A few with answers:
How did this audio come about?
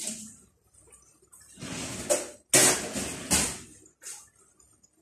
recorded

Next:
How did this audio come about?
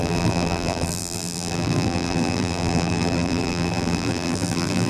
remade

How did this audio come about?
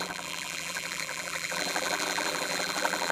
remade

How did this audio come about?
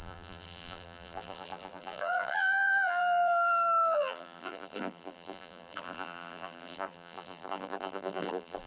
remade